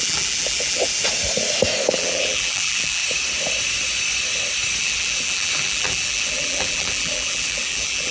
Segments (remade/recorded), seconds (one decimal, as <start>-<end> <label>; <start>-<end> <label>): 0.0-0.9 remade; 0.9-1.9 recorded; 1.9-3.0 remade; 3.0-4.8 recorded; 4.8-8.1 remade